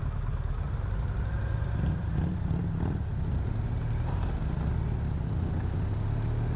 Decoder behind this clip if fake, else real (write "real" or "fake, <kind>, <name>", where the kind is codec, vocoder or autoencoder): real